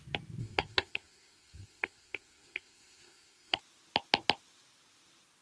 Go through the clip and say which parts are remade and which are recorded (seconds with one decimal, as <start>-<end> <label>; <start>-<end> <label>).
0.0-0.4 recorded; 0.4-3.6 remade; 3.6-5.4 recorded